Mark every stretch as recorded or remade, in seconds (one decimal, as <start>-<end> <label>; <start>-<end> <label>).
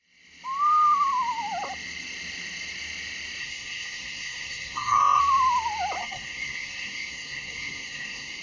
0.0-3.4 recorded; 3.4-5.2 remade; 5.2-6.0 recorded; 6.0-8.4 remade